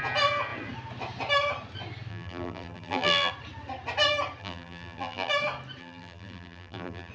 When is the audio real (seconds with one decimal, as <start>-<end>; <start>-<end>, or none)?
0.0-2.1; 3.3-4.4; 5.3-5.8